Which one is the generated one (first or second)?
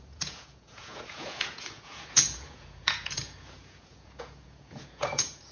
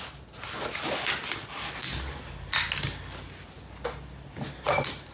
first